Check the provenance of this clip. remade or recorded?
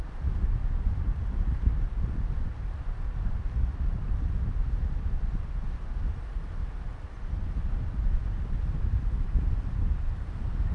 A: recorded